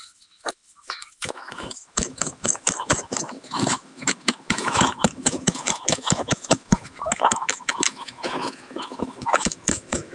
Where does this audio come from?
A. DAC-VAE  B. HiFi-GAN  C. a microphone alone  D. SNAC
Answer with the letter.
A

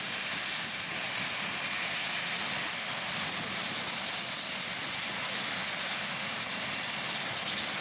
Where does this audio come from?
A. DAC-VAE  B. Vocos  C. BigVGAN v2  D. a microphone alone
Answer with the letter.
D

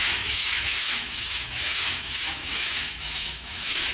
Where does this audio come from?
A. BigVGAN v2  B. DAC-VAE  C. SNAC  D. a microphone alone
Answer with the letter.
B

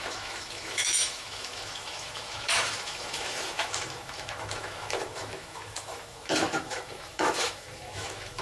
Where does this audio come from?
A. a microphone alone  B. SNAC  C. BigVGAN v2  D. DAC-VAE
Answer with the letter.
D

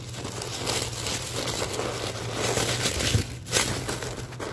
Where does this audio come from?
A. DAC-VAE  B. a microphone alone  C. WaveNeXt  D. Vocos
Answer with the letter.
B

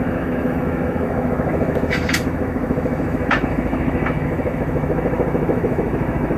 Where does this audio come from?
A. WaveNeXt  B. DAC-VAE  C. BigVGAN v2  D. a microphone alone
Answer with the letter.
B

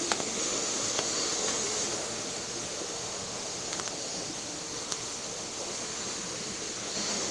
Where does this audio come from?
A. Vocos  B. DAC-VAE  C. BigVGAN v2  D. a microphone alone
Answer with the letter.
B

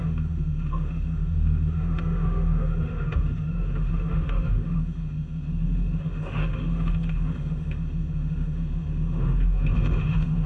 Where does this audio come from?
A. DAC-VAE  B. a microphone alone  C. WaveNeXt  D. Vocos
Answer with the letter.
A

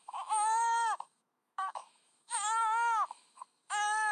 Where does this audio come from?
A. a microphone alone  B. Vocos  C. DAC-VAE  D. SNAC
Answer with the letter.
C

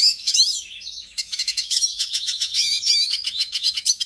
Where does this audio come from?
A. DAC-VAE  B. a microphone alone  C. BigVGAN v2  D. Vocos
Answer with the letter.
A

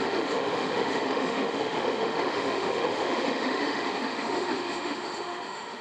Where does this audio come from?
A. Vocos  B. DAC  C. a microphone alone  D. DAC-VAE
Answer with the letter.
D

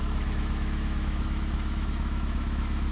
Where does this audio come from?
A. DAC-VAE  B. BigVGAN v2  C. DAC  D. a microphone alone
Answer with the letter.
A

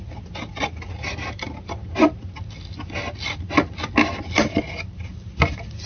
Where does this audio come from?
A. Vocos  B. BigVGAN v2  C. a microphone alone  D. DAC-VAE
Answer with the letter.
C